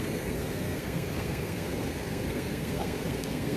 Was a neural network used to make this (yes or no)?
yes